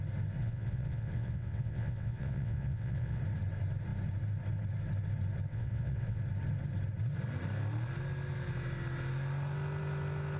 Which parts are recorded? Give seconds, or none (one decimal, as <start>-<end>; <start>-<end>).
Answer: 0.0-0.4; 3.2-5.5; 6.2-10.4